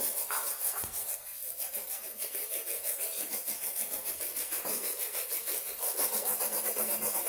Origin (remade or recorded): remade